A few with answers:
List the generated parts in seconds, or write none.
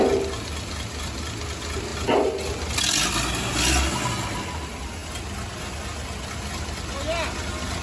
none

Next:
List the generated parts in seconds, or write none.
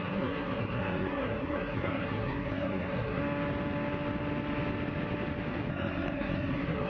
0.0-3.2 (codec, SNAC); 5.7-6.9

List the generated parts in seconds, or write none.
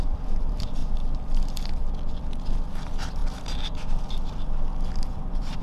0.0-0.8 (vocoder, BigVGAN v2); 2.8-3.2; 5.0-5.6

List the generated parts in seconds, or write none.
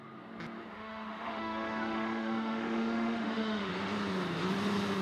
0.7-3.7 (autoencoder, DAC-VAE)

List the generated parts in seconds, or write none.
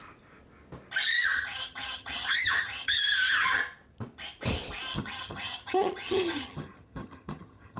1.2-3.6 (vocoder, HiFi-GAN); 4.9-7.8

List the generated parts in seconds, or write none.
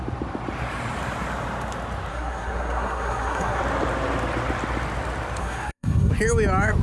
2.1-3.6 (codec, SNAC); 5.4-6.1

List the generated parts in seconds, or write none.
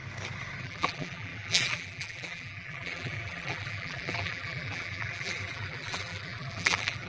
0.6-7.1 (vocoder, BigVGAN v2)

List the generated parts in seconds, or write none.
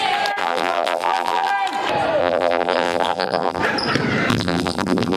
0.4-1.5 (vocoder, BigVGAN v2); 2.2-3.6; 4.3-5.2